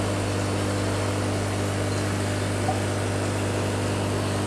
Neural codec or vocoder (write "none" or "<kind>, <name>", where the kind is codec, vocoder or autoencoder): none